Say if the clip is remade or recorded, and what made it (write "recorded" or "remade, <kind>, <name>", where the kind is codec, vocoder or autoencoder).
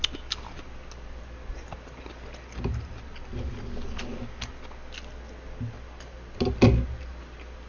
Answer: recorded